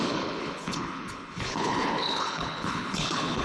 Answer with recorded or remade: remade